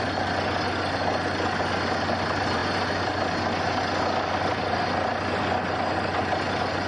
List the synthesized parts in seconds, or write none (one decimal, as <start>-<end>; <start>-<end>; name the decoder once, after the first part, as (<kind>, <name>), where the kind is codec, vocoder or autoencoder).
none